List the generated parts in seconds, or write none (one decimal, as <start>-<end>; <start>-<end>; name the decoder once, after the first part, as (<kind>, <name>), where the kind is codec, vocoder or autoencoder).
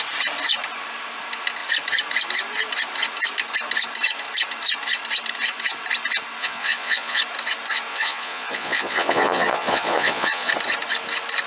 6.4-7.2 (vocoder, Vocos); 7.9-10.5